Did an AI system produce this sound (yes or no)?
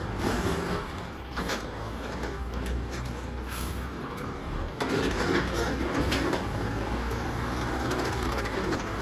yes